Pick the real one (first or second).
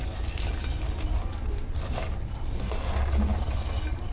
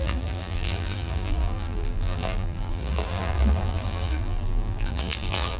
first